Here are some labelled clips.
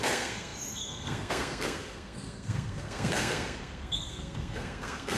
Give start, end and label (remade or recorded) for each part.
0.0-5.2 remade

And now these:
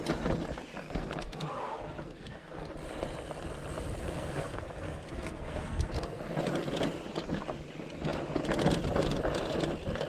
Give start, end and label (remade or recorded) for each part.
0.0-0.8 recorded; 0.8-2.7 remade; 2.7-4.0 recorded; 4.0-6.2 remade; 6.2-10.1 recorded

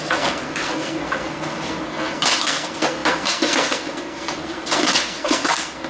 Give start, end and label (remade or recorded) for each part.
0.0-5.9 remade

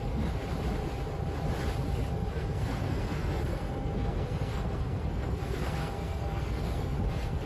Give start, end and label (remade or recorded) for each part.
0.0-0.4 remade; 0.4-2.1 recorded; 2.1-7.5 remade

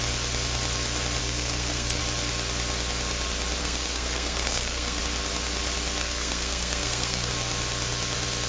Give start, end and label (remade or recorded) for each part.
0.0-1.2 recorded; 1.2-2.0 remade; 2.0-3.6 recorded; 3.6-5.0 remade; 5.0-6.0 recorded; 6.0-7.3 remade; 7.3-8.5 recorded